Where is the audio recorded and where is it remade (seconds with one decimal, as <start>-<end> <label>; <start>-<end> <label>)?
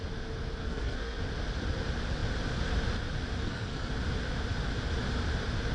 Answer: 0.0-0.6 recorded; 0.6-1.2 remade; 1.2-3.4 recorded; 3.4-3.9 remade; 3.9-5.7 recorded